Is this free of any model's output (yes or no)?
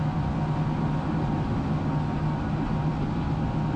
yes